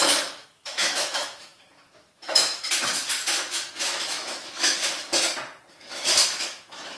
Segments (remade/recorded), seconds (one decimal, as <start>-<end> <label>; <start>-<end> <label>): 0.0-4.9 remade; 4.9-5.7 recorded; 5.7-7.0 remade